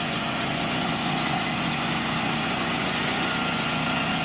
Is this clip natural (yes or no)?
no